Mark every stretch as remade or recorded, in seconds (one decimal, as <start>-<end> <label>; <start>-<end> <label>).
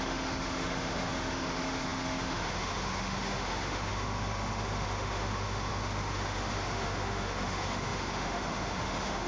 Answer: 0.0-9.3 remade